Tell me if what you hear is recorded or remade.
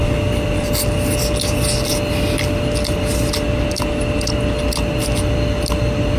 recorded